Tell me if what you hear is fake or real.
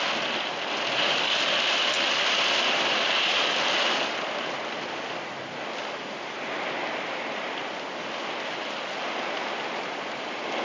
real